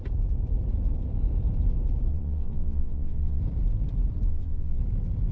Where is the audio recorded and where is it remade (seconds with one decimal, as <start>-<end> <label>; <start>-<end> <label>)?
0.0-2.1 recorded; 2.1-3.4 remade; 3.4-4.3 recorded; 4.3-4.8 remade; 4.8-5.3 recorded